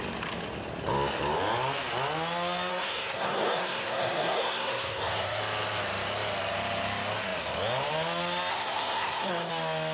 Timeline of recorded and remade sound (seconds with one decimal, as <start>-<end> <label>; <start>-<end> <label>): 0.0-2.7 recorded; 2.7-5.4 remade; 5.4-8.5 recorded; 8.5-9.5 remade; 9.5-9.9 recorded